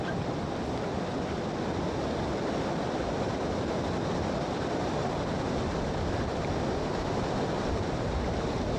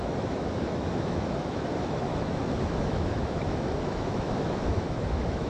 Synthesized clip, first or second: second